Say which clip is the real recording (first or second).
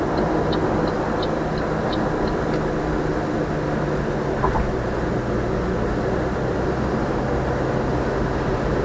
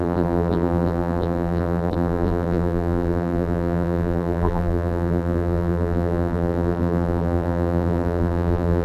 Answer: first